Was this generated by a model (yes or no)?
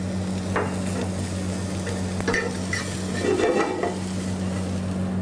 no